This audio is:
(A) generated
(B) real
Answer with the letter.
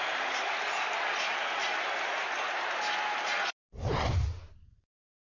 B